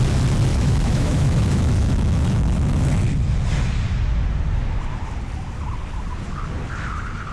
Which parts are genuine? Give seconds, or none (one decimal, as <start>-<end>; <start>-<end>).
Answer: 0.0-0.5; 2.9-7.3